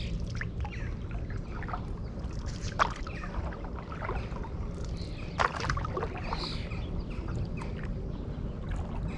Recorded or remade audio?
recorded